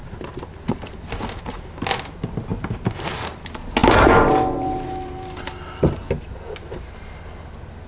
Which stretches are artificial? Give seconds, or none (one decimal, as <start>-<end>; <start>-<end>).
none